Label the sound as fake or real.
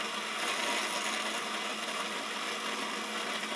real